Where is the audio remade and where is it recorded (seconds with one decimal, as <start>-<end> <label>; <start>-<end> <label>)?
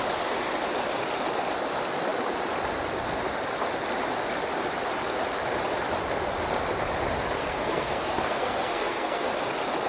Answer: 0.0-7.4 recorded; 7.4-9.3 remade; 9.3-9.9 recorded